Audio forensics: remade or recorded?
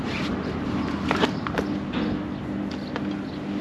recorded